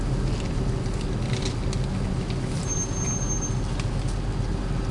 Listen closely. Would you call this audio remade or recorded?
recorded